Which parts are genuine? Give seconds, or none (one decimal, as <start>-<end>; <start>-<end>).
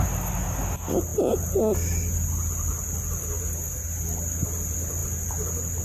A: 0.0-5.8